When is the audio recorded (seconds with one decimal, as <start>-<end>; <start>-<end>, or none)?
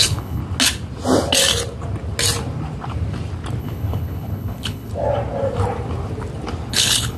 0.4-3.6; 4.9-6.7